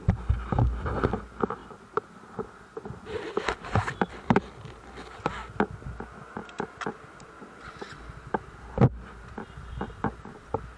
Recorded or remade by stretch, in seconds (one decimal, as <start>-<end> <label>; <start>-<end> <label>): 0.0-1.6 recorded; 1.6-4.8 remade; 4.8-10.8 recorded